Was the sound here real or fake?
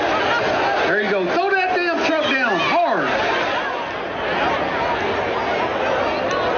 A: real